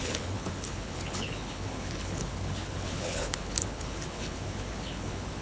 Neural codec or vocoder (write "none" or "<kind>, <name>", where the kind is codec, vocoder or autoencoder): codec, HILCodec